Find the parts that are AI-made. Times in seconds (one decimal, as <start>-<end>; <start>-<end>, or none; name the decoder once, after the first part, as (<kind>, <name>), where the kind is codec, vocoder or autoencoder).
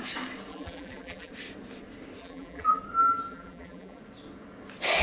0.5-1.3 (vocoder, BigVGAN v2); 2.2-2.8; 3.3-4.0